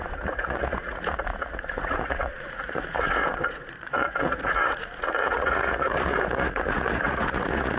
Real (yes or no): no